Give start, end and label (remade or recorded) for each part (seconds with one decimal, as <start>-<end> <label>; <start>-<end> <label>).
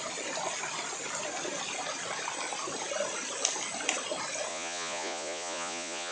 0.0-4.5 recorded; 4.5-6.1 remade